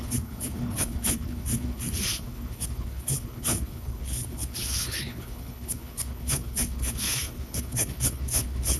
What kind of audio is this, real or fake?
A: fake